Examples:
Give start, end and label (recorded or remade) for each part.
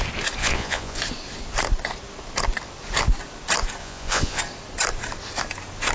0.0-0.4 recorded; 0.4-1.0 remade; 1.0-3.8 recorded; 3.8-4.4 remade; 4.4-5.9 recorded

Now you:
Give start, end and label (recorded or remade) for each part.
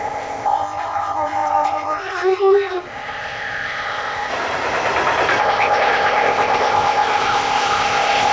0.0-4.3 remade; 4.3-5.4 recorded; 5.4-8.3 remade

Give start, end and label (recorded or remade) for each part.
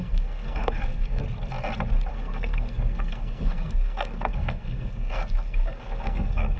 0.0-1.2 remade; 1.2-2.1 recorded; 2.1-6.6 remade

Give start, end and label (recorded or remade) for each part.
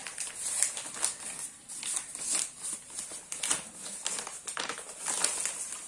0.0-5.9 recorded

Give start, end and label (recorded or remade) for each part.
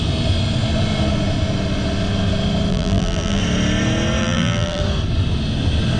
0.0-2.7 recorded; 2.7-3.4 remade; 3.4-4.2 recorded; 4.2-4.8 remade; 4.8-6.0 recorded